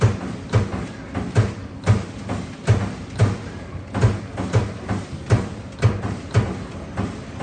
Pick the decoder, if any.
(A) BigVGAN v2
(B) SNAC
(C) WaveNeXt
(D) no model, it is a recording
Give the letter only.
D